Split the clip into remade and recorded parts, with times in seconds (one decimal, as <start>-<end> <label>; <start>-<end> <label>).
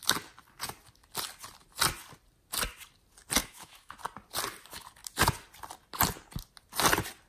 0.0-3.4 recorded; 3.4-3.9 remade; 3.9-7.3 recorded